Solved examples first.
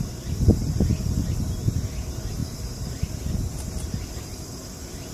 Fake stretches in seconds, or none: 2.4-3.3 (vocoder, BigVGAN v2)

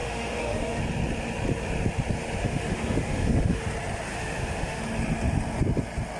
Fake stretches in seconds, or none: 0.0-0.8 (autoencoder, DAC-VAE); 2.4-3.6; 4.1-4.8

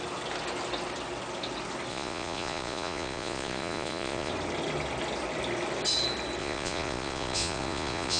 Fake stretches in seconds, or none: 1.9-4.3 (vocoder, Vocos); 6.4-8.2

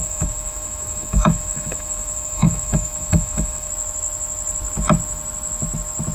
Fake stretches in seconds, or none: 0.0-3.7 (autoencoder, DAC-VAE)

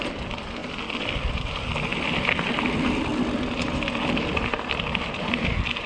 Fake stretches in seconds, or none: 0.6-1.5 (vocoder, BigVGAN v2); 1.9-2.5

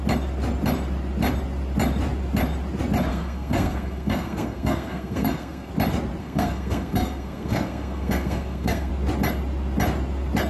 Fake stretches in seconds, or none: 3.1-5.7 (codec, SNAC); 6.2-8.9

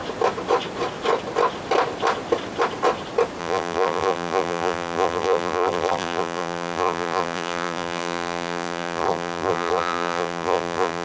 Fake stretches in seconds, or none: 3.4-11.0 (vocoder, BigVGAN v2)

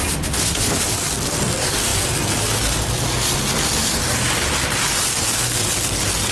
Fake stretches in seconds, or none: none